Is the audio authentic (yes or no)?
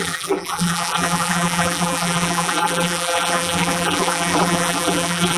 no